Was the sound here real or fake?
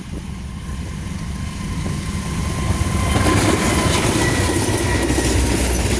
real